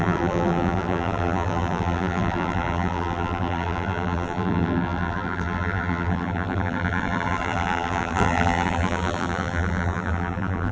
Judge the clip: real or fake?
fake